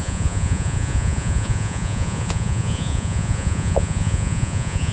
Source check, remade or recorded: remade